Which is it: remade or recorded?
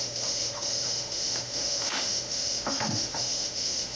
remade